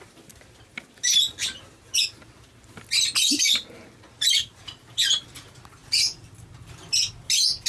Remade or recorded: recorded